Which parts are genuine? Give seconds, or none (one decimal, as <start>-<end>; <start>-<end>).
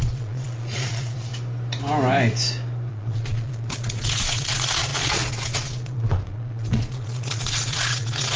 1.3-2.9